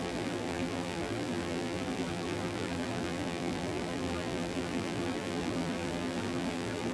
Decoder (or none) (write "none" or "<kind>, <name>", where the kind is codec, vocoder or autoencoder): vocoder, BigVGAN v2